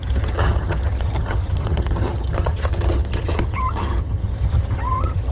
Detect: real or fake fake